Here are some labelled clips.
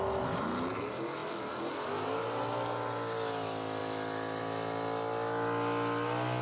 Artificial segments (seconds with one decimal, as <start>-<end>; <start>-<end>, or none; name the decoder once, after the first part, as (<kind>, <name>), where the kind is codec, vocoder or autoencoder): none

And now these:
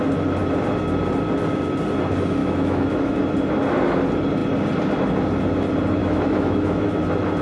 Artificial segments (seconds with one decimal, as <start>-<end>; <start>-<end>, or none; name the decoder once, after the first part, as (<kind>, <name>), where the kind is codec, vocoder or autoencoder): 2.4-3.2 (autoencoder, DAC-VAE); 6.0-7.0

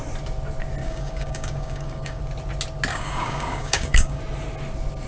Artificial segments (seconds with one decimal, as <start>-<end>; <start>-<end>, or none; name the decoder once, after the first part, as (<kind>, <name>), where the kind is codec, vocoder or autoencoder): 0.8-2.2 (codec, DAC); 2.9-4.2

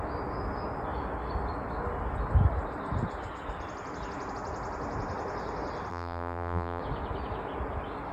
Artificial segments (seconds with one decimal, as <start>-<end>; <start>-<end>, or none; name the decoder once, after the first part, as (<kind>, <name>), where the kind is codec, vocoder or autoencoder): 5.9-6.8 (vocoder, BigVGAN v2)

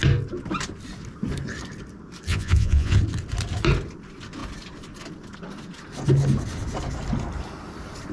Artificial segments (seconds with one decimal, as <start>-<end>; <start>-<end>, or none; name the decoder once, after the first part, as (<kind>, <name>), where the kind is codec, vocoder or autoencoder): 2.3-3.0 (vocoder, Vocos)